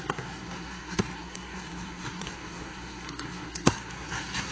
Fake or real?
fake